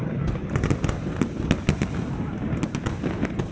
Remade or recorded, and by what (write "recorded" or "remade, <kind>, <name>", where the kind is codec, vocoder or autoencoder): recorded